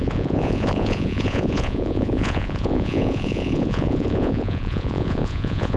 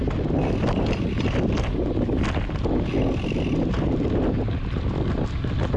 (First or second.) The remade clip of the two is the first